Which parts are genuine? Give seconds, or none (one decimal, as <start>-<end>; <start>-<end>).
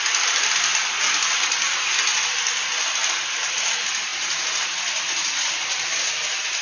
4.1-6.6